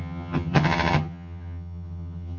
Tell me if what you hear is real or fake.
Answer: fake